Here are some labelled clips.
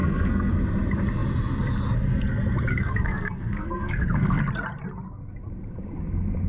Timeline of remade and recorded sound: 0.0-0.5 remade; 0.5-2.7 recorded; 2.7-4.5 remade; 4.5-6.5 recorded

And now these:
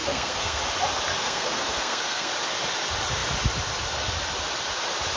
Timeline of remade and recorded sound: 0.0-0.6 remade; 0.6-1.1 recorded; 1.1-2.3 remade; 2.3-5.2 recorded

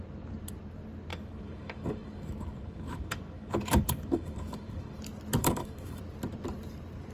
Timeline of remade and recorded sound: 0.0-1.1 recorded; 1.1-5.0 remade; 5.0-5.4 recorded; 5.4-6.0 remade; 6.0-7.1 recorded

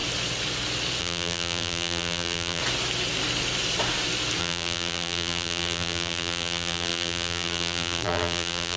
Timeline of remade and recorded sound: 0.0-1.0 recorded; 1.0-2.6 remade; 2.6-4.4 recorded; 4.4-8.8 remade

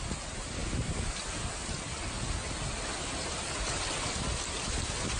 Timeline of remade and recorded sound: 0.0-5.2 recorded